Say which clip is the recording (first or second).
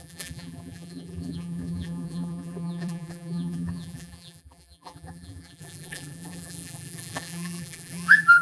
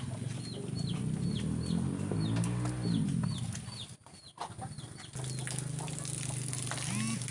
second